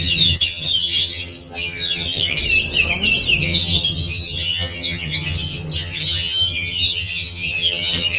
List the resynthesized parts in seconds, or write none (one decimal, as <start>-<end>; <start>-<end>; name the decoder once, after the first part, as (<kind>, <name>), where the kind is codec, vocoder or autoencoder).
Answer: 0.0-2.4 (vocoder, HiFi-GAN); 3.4-8.2